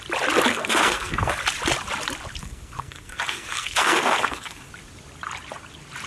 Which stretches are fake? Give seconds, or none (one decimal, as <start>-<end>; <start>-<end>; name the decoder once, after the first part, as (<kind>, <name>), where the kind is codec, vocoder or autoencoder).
0.5-1.3 (codec, SNAC); 2.4-4.7